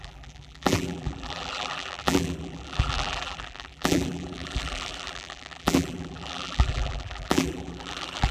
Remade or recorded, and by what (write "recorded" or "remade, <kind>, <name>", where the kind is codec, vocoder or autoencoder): remade, vocoder, BigVGAN v2